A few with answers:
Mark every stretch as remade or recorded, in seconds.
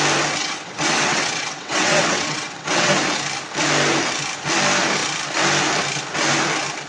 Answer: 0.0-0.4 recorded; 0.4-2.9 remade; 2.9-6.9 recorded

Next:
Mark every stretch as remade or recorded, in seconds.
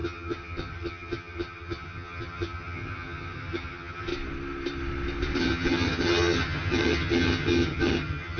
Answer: 0.0-4.1 remade; 4.1-5.4 recorded; 5.4-8.4 remade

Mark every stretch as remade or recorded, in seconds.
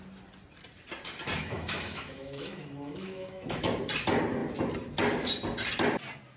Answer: 0.0-1.4 recorded; 1.4-3.8 remade; 3.8-6.4 recorded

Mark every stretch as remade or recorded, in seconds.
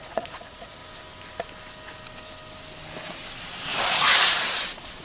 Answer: 0.0-0.8 remade; 0.8-3.8 recorded; 3.8-5.0 remade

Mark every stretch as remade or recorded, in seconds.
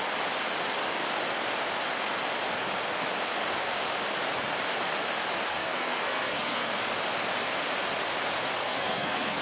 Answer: 0.0-5.5 recorded; 5.5-6.7 remade; 6.7-8.6 recorded; 8.6-9.4 remade